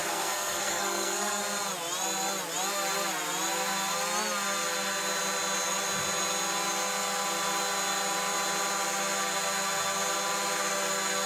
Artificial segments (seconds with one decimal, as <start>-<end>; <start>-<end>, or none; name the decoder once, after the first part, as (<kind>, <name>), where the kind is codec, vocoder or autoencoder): 0.0-1.4 (codec, SNAC)